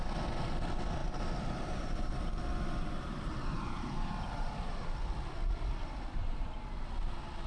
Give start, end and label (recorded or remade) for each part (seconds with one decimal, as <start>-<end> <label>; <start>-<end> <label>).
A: 0.0-1.0 recorded; 1.0-4.9 remade; 4.9-7.5 recorded